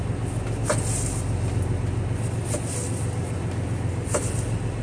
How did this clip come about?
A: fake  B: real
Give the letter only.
B